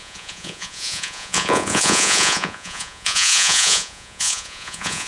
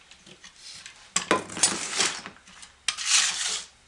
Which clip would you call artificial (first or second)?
first